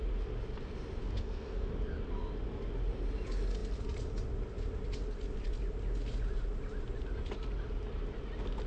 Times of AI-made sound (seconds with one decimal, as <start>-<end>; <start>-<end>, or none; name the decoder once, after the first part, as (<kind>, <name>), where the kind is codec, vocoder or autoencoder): 1.0-1.7 (codec, SNAC)